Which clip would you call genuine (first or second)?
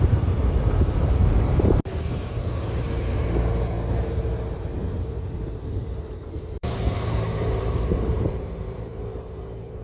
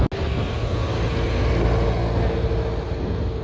second